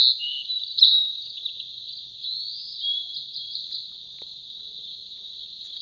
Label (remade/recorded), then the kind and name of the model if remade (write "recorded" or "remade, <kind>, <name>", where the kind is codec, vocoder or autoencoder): recorded